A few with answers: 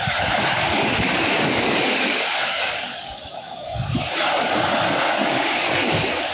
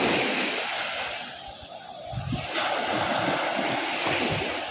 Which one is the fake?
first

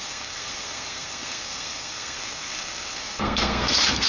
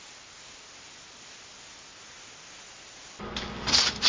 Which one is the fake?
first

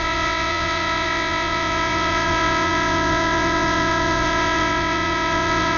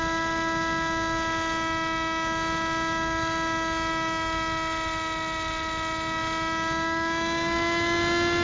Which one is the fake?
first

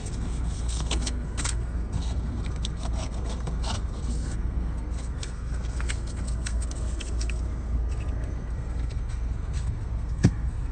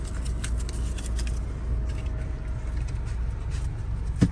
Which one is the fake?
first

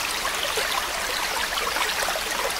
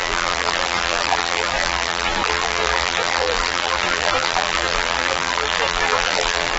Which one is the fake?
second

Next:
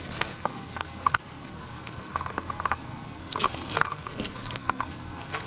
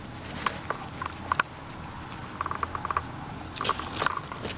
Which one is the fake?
first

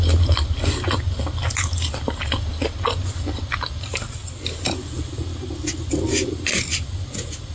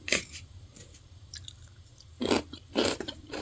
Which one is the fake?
second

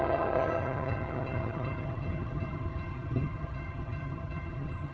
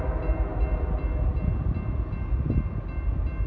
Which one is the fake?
first